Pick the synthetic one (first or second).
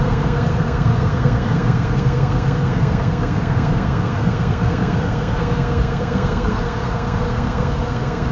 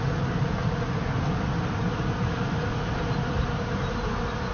first